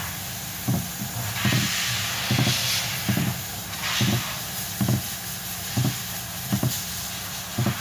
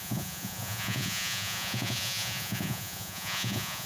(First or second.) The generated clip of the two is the second